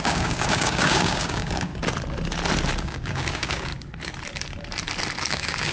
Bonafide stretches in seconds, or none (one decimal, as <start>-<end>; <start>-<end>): 1.7-2.8; 3.7-5.2